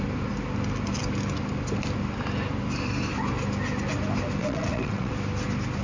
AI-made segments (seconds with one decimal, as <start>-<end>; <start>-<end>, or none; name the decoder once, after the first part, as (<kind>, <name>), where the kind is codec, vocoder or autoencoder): 4.4-5.1 (vocoder, WaveNeXt)